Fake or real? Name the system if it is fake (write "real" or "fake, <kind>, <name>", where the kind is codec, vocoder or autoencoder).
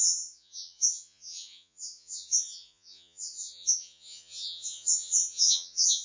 fake, vocoder, Vocos